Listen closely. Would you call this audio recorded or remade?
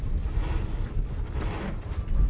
recorded